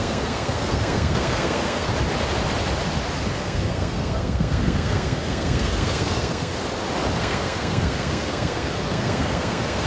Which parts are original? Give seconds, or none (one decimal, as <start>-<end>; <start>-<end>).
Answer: 1.9-3.3; 6.5-7.2